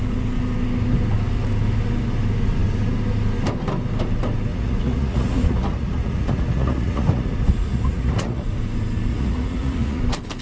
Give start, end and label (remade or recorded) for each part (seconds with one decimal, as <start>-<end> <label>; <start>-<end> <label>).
0.0-4.5 recorded; 4.5-8.5 remade; 8.5-9.1 recorded; 9.1-10.0 remade; 10.0-10.4 recorded